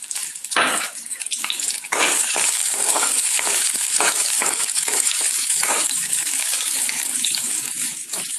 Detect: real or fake fake